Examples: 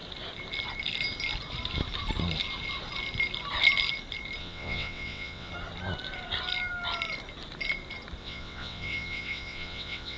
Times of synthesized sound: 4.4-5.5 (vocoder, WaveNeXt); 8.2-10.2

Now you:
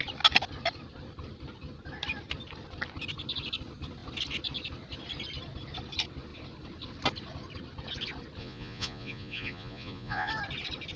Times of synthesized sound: 8.4-10.3 (vocoder, Vocos)

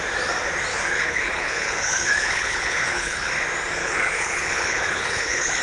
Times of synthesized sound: 0.7-3.3 (codec, HILCodec); 3.8-5.6

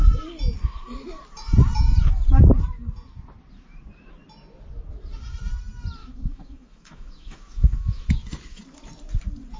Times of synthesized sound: 6.0-8.6 (autoencoder, DAC-VAE)

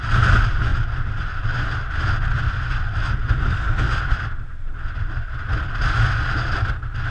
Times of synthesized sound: 0.7-1.4 (vocoder, BigVGAN v2)

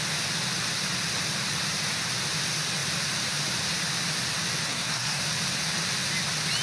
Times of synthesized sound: 4.7-5.2 (codec, SNAC)

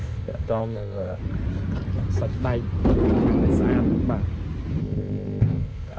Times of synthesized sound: 0.0-1.2 (codec, ZipCodec); 4.8-6.0